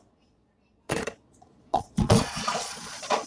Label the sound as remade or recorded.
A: remade